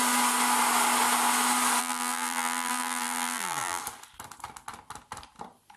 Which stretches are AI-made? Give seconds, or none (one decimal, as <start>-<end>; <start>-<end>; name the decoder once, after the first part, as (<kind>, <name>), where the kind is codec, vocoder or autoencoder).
1.8-3.8 (vocoder, BigVGAN v2)